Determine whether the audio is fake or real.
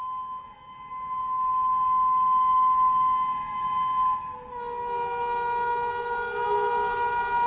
real